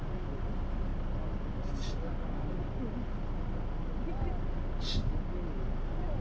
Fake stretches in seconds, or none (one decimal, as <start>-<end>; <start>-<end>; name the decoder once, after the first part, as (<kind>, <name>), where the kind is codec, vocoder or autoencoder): none